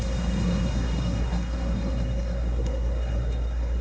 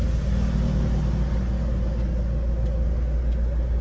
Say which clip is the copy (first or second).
first